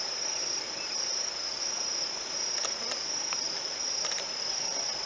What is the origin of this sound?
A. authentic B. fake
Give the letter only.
A